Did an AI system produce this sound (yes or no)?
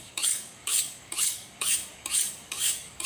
yes